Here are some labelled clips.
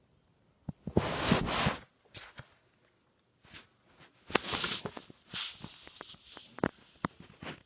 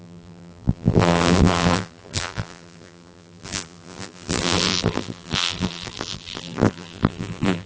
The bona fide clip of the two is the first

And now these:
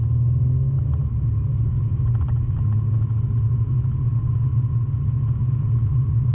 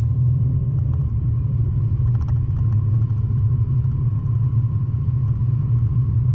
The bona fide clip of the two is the first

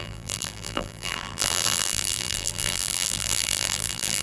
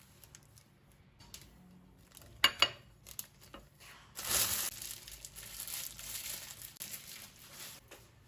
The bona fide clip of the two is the second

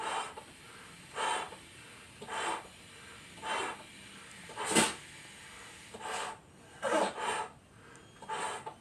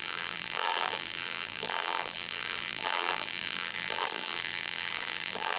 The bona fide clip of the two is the first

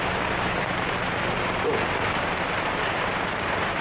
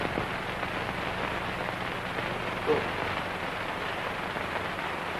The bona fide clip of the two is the second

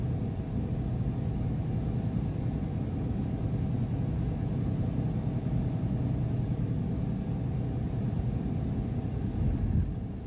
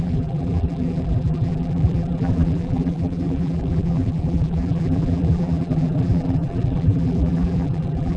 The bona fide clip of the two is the first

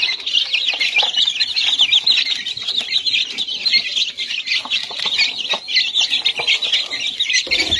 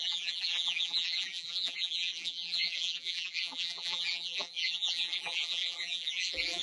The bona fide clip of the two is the first